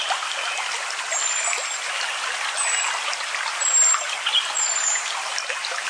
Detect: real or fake real